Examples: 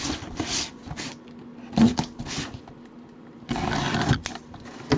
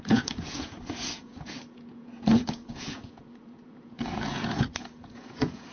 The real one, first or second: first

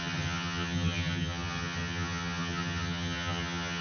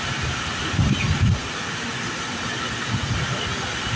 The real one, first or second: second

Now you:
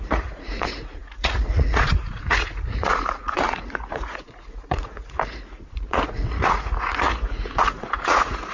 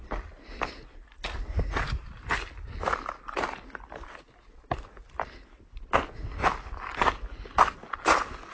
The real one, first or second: second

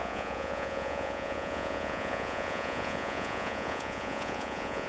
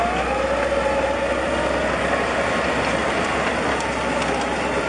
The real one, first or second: second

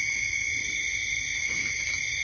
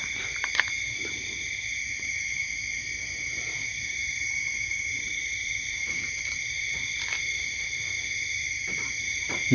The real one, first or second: first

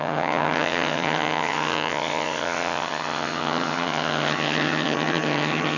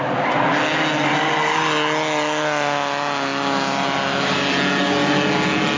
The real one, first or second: second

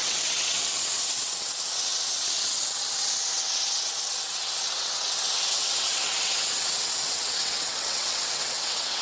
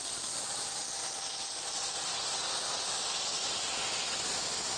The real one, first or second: second